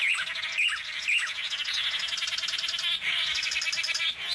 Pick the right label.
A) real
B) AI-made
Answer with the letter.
A